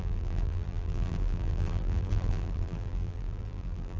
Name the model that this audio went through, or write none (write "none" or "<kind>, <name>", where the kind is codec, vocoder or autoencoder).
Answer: vocoder, BigVGAN v2